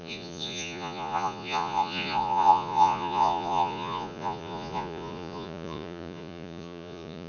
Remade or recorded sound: remade